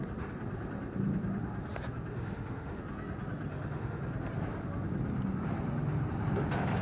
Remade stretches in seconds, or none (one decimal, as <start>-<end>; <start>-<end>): 2.1-2.8; 3.5-4.0